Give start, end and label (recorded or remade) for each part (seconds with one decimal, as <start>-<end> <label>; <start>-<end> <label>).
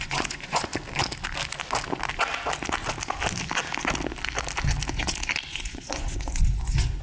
0.0-0.7 remade; 0.7-4.9 recorded; 4.9-7.0 remade